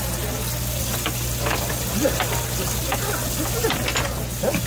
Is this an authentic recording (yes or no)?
yes